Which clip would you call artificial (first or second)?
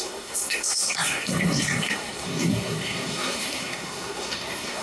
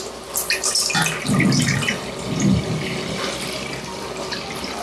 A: first